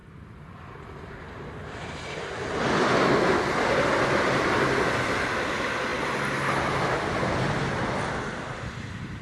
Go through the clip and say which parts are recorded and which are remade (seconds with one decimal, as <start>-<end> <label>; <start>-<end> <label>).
0.0-9.2 recorded